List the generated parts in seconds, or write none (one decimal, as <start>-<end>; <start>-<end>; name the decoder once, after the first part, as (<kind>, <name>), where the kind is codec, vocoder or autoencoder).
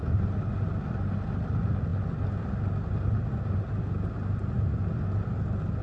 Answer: none